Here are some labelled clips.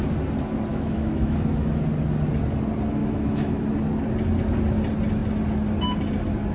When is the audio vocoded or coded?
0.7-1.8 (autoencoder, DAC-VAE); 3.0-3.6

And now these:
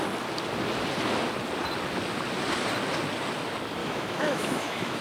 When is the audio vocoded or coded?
3.8-5.0 (autoencoder, DAC-VAE)

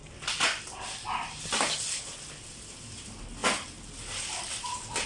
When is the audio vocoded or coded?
none

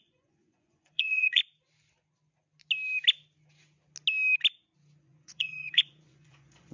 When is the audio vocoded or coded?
0.0-1.4 (vocoder, Vocos); 5.0-6.7

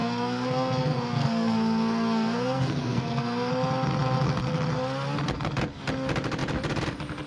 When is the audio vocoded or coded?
0.0-3.5 (codec, SNAC)

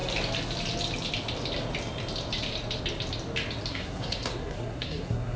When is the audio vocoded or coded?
3.7-5.4 (codec, SNAC)

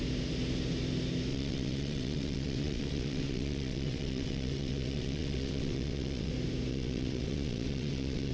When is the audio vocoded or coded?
1.3-6.3 (vocoder, WaveNeXt); 6.7-8.3

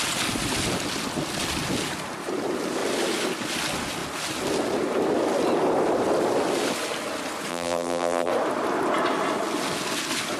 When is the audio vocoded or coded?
7.5-8.3 (vocoder, BigVGAN v2)